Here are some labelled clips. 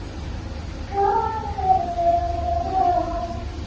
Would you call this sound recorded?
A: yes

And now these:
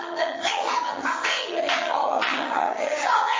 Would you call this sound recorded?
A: no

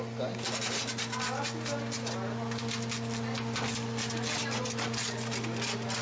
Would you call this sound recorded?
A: yes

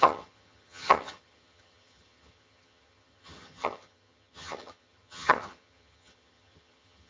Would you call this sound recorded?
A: no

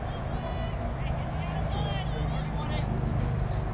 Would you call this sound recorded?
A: yes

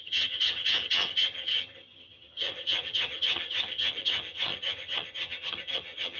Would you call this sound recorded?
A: no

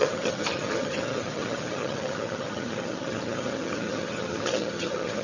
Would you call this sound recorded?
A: no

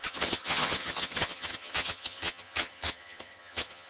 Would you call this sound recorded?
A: no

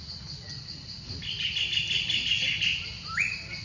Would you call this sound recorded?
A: yes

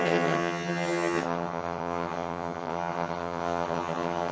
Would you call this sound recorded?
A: no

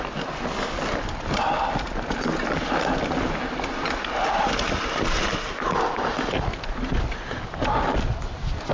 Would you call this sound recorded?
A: yes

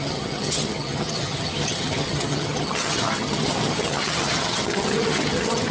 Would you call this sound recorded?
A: no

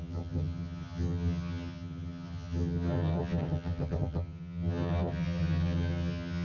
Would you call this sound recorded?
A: no